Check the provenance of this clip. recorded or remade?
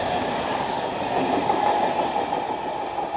recorded